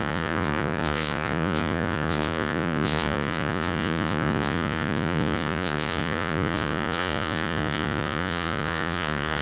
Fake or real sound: fake